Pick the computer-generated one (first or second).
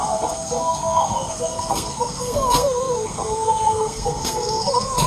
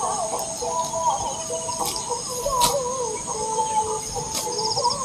first